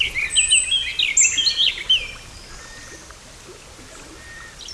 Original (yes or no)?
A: yes